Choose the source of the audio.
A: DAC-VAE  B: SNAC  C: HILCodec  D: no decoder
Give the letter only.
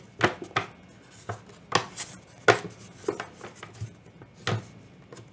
D